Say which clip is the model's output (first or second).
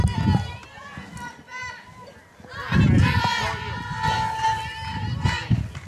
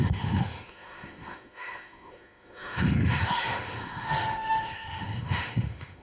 second